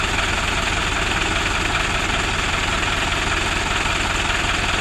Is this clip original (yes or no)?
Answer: yes